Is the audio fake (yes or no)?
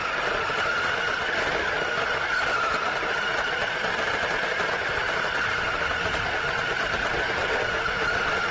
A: no